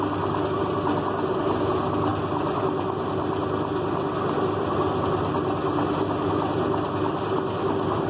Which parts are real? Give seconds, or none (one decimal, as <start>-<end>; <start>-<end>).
0.0-8.1